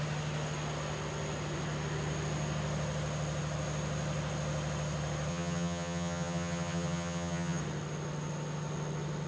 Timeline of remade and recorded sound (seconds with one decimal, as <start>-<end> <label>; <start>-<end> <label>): 0.0-5.3 recorded; 5.3-7.6 remade; 7.6-9.3 recorded